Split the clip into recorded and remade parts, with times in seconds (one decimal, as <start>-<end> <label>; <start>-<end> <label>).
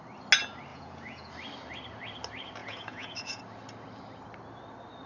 0.0-0.7 recorded; 0.7-1.3 remade; 1.3-2.6 recorded; 2.6-3.4 remade; 3.4-5.1 recorded